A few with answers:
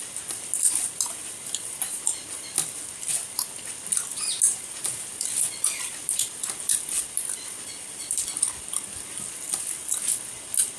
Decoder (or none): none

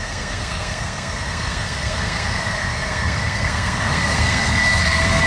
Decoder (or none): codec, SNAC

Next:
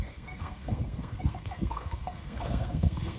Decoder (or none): codec, SNAC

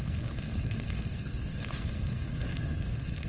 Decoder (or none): codec, SNAC